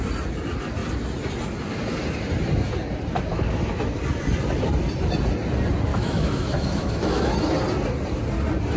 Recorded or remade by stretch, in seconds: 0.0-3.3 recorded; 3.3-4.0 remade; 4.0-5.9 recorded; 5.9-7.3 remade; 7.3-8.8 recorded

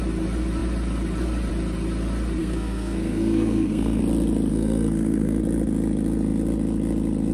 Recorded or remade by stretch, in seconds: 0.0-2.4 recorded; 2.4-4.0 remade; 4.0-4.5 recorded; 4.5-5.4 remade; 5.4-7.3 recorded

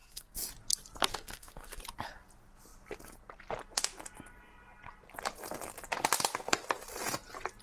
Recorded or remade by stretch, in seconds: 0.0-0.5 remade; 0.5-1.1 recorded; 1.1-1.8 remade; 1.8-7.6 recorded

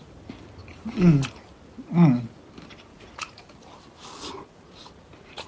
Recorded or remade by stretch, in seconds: 0.0-2.9 recorded; 2.9-3.5 remade; 3.5-4.3 recorded; 4.3-5.5 remade

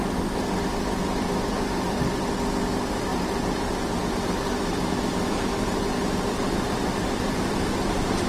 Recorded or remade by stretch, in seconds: 0.0-3.1 recorded; 3.1-8.3 remade

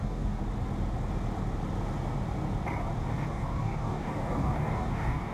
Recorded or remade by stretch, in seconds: 0.0-0.4 remade; 0.4-3.3 recorded; 3.3-5.3 remade